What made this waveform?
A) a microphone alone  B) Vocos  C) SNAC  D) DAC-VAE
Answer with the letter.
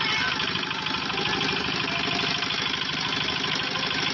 A